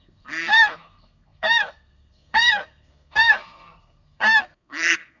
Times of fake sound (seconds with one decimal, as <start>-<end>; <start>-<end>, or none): 0.0-5.2